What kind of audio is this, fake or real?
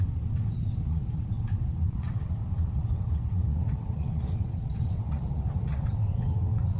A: fake